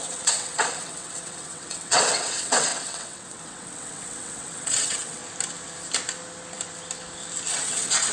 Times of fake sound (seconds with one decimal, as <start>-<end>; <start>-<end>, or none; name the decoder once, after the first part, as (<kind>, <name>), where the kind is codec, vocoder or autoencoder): 0.0-5.2 (vocoder, WaveNeXt); 7.5-8.1